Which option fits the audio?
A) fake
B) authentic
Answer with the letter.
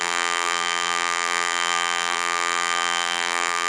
A